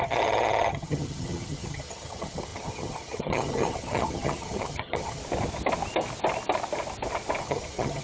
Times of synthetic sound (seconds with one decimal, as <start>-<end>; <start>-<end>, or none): 0.0-5.2; 7.4-8.0